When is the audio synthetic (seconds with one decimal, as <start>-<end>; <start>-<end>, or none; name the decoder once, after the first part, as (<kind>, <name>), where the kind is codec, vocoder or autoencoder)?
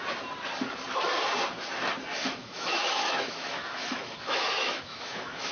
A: 2.2-5.5 (autoencoder, DAC-VAE)